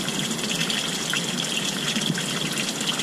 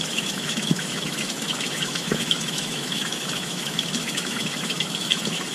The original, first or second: first